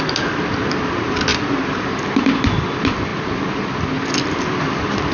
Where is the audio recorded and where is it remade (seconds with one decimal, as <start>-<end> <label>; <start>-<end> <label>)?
0.0-1.3 remade; 1.3-2.7 recorded; 2.7-3.1 remade; 3.1-5.1 recorded